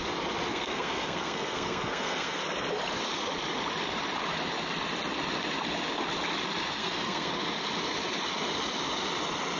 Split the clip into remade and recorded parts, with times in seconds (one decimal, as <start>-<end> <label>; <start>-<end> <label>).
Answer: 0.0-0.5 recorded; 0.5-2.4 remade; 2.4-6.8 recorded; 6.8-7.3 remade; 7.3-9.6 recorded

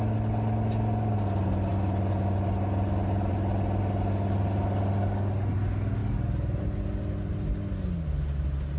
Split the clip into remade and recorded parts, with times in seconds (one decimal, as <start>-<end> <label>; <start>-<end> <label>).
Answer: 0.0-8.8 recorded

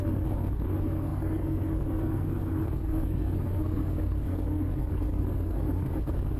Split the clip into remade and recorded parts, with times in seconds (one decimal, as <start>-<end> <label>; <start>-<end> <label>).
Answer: 0.0-6.4 remade

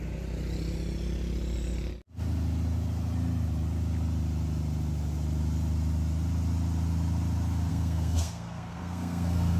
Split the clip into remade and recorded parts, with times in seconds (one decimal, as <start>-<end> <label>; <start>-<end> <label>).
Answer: 0.0-7.7 recorded; 7.7-9.6 remade

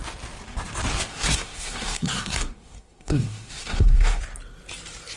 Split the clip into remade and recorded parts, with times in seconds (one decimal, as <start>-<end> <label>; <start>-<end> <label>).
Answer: 0.0-1.1 recorded; 1.1-4.2 remade; 4.2-5.2 recorded